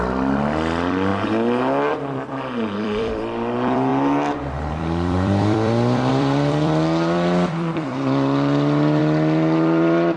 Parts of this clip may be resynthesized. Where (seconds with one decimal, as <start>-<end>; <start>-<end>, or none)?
0.0-1.1; 1.9-3.9; 4.7-10.2